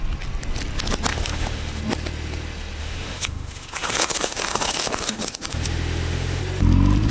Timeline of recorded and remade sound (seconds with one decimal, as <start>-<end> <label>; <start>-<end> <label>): 0.0-1.1 recorded; 1.1-1.8 remade; 1.8-2.8 recorded; 2.8-6.4 remade; 6.4-7.1 recorded

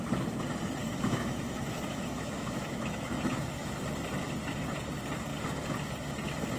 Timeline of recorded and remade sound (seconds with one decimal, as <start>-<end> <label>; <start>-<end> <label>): 0.0-0.8 recorded; 0.8-3.8 remade; 3.8-6.6 recorded

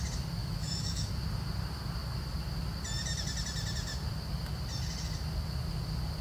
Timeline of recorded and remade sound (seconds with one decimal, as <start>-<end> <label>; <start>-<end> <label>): 0.0-0.4 recorded; 0.4-1.1 remade; 1.1-6.2 recorded

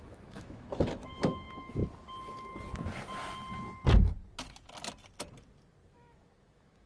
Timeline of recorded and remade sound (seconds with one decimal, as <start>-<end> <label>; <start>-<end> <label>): 0.0-1.8 remade; 1.8-5.9 recorded; 5.9-6.9 remade

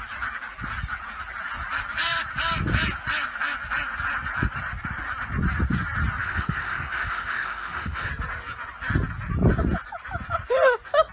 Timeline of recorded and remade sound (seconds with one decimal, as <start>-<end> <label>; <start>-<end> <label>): 0.0-6.2 recorded; 6.2-8.1 remade; 8.1-11.1 recorded

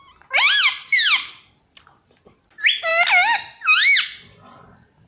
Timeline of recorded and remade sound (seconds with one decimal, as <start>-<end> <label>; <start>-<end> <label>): 0.0-5.1 recorded

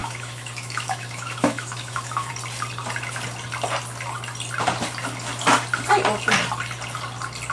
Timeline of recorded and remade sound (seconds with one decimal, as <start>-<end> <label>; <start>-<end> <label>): 0.0-2.3 remade; 2.3-7.5 recorded